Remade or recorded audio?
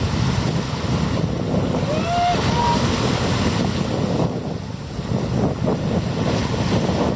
recorded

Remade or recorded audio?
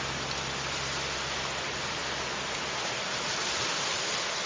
recorded